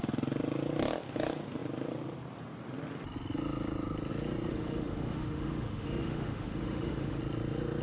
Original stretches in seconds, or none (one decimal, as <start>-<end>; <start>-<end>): 0.0-4.5; 7.2-7.8